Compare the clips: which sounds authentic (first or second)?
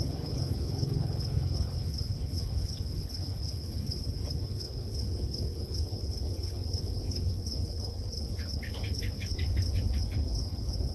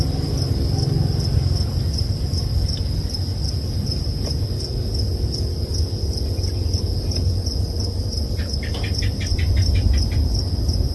second